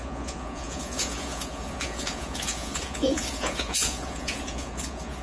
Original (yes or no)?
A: no